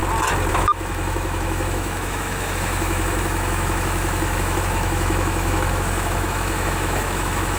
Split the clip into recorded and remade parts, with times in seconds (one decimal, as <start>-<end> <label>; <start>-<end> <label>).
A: 0.0-0.5 recorded; 0.5-7.6 remade